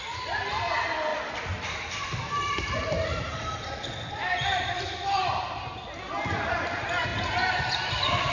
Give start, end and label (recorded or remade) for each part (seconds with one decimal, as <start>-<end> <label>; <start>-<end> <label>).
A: 0.0-7.1 remade; 7.1-7.7 recorded; 7.7-8.3 remade